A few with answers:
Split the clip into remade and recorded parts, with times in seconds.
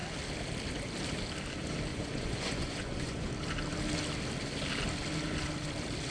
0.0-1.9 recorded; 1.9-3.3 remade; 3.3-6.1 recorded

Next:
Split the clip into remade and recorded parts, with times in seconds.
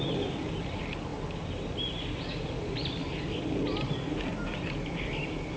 0.0-5.6 recorded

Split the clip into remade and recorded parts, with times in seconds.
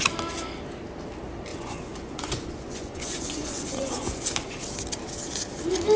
0.0-1.5 recorded; 1.5-4.2 remade; 4.2-6.0 recorded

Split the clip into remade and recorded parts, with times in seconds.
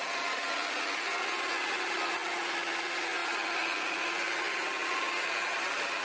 0.0-6.0 recorded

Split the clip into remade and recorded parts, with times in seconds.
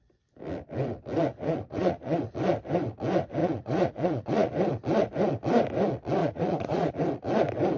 0.0-1.4 recorded; 1.4-2.2 remade; 2.2-3.4 recorded; 3.4-4.5 remade; 4.5-6.2 recorded; 6.2-6.9 remade; 6.9-7.8 recorded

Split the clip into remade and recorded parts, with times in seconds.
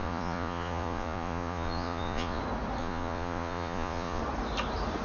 0.0-2.4 remade; 2.4-2.8 recorded; 2.8-4.2 remade; 4.2-5.0 recorded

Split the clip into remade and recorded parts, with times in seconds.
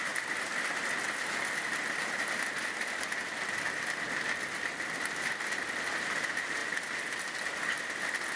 0.0-8.4 recorded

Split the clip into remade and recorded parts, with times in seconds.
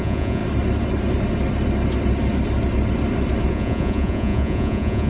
0.0-0.4 remade; 0.4-3.5 recorded; 3.5-5.1 remade